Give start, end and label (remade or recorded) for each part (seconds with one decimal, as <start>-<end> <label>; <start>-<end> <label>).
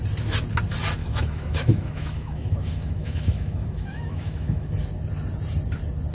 0.0-1.0 recorded; 1.0-4.7 remade; 4.7-6.1 recorded